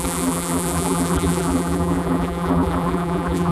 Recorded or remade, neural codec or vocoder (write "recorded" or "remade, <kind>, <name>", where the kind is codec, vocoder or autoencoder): remade, vocoder, BigVGAN v2